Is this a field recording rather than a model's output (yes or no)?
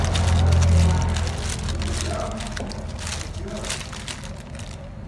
yes